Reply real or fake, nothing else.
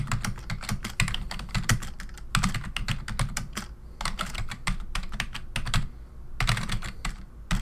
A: real